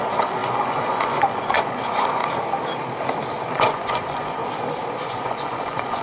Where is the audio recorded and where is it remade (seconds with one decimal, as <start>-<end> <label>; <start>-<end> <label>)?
0.0-2.2 remade; 2.2-3.5 recorded; 3.5-4.4 remade; 4.4-5.0 recorded; 5.0-6.0 remade